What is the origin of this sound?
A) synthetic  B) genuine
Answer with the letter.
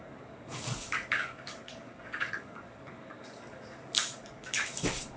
A